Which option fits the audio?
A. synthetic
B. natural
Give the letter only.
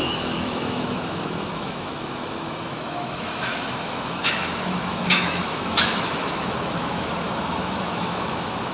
A